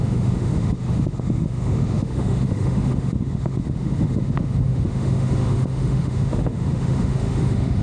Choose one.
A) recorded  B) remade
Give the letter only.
B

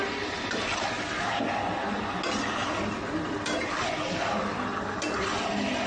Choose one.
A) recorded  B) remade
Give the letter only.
A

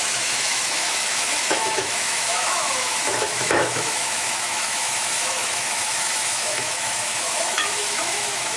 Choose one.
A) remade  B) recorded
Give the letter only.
A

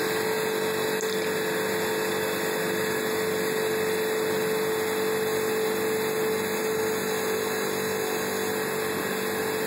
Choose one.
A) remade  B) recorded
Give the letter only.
B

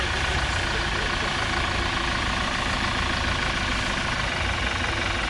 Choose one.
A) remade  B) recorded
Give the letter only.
B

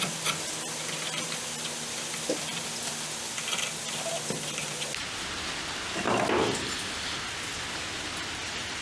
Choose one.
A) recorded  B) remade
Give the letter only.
A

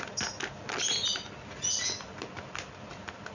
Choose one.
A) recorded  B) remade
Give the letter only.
A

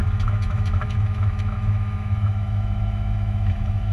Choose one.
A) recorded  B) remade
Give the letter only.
B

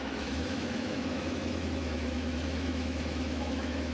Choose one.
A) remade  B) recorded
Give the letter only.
A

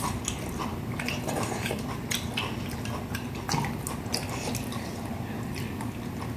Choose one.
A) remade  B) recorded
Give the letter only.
B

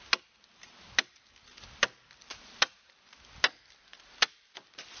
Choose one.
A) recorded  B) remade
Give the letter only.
A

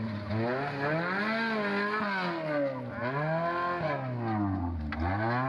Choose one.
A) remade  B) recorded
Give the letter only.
B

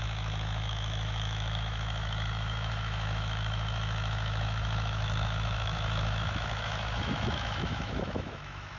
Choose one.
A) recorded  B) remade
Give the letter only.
B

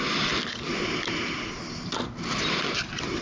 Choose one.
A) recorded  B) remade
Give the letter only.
A